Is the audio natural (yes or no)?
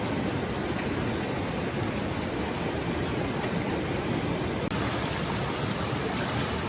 yes